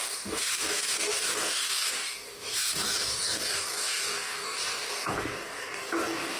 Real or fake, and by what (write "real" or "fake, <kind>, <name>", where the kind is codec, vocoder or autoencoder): fake, codec, DAC